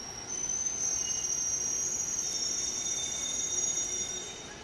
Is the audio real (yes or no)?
no